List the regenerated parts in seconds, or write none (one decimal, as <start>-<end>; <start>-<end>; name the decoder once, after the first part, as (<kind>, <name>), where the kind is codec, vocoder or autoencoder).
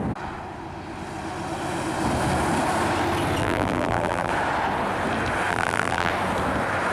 3.4-4.3 (vocoder, BigVGAN v2); 5.5-6.1